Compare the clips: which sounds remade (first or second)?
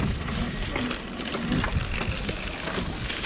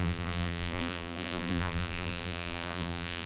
second